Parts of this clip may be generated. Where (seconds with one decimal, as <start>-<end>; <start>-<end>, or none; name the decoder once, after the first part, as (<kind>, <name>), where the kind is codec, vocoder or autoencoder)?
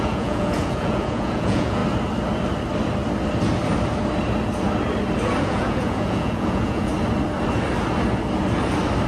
0.0-1.8 (vocoder, Vocos); 5.4-6.9